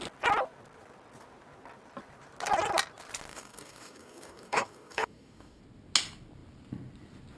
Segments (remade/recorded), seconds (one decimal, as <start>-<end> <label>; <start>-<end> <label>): 0.0-3.3 recorded; 3.3-5.6 remade; 5.6-7.4 recorded